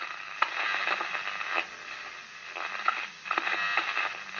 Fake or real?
real